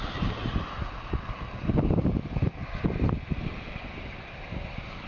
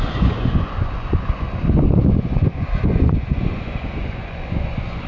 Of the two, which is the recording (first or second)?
first